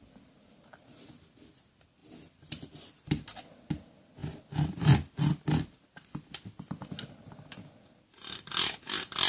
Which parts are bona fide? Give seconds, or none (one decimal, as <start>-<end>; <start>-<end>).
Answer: 0.0-9.3